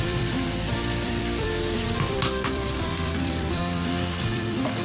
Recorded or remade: remade